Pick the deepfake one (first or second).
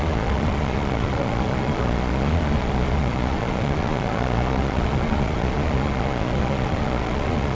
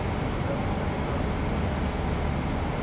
first